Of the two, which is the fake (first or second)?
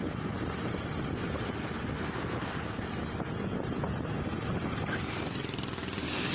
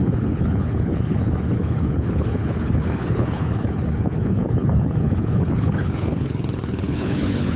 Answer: second